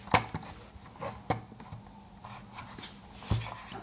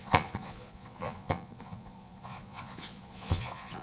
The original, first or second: first